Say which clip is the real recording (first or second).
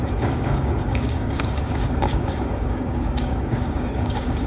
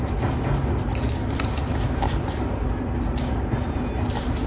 second